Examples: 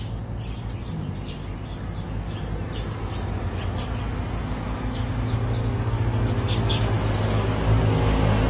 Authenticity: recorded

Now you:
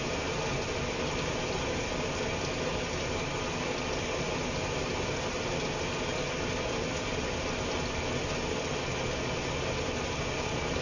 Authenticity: recorded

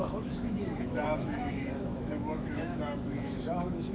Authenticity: remade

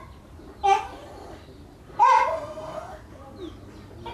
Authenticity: recorded